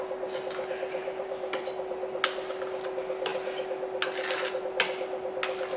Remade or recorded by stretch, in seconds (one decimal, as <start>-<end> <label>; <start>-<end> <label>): 0.0-1.0 recorded; 1.0-2.2 remade; 2.2-5.8 recorded

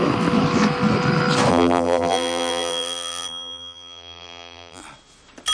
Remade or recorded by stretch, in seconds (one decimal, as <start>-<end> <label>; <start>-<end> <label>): 0.0-1.5 recorded; 1.5-4.8 remade; 4.8-5.5 recorded

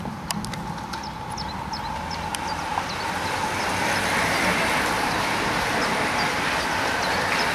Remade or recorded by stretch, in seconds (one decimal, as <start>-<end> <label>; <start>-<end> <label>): 0.0-7.5 recorded

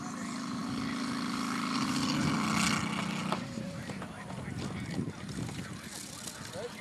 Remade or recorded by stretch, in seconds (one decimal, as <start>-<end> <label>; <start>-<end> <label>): 0.0-3.2 recorded; 3.2-4.3 remade; 4.3-6.8 recorded

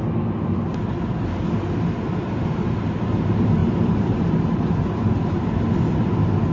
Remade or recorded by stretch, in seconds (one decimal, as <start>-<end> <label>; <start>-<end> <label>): 0.0-3.6 recorded; 3.6-5.8 remade; 5.8-6.5 recorded

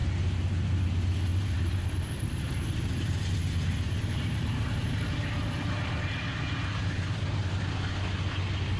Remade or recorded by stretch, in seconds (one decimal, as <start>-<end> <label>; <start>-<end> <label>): 0.0-1.3 recorded; 1.3-5.6 remade; 5.6-6.3 recorded; 6.3-7.6 remade; 7.6-8.8 recorded

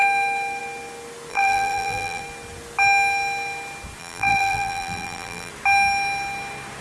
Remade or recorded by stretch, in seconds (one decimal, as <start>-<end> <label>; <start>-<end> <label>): 0.0-1.3 recorded; 1.3-2.2 remade; 2.2-4.0 recorded; 4.0-5.5 remade; 5.5-6.8 recorded